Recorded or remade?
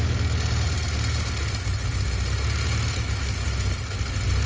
recorded